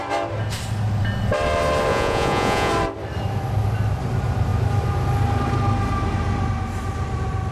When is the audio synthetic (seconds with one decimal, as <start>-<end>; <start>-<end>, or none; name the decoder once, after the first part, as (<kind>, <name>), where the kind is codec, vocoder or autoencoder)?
1.9-2.7 (vocoder, Vocos)